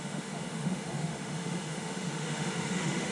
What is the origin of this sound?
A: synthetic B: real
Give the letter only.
A